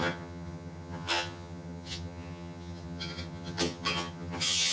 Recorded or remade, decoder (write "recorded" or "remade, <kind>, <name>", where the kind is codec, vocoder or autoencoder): remade, vocoder, HiFi-GAN